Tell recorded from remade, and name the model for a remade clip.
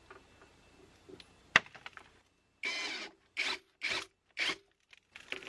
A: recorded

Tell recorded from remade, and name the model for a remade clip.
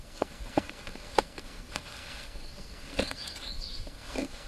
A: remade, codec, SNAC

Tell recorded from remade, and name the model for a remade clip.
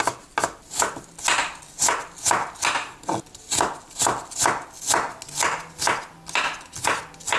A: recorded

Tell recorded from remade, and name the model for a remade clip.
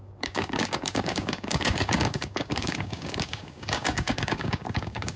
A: remade, codec, DAC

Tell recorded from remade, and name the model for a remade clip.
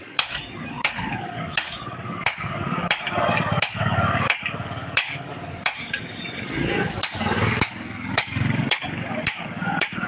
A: remade, codec, DAC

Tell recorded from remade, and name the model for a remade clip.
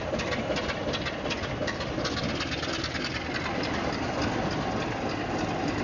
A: recorded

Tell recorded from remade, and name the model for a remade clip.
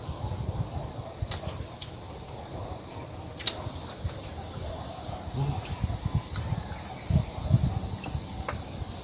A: recorded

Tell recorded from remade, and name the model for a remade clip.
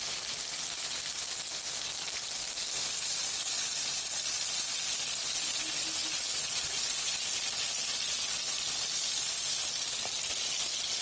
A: recorded